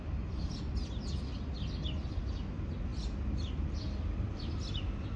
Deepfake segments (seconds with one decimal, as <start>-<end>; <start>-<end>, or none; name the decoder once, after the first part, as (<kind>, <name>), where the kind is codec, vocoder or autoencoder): none